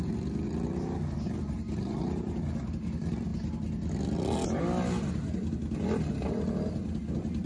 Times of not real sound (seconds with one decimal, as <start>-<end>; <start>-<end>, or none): none